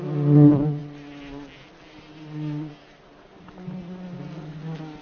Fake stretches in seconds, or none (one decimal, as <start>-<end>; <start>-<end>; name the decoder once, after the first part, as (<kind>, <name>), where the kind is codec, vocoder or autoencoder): none